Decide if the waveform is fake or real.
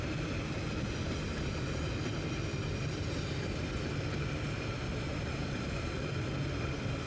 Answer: real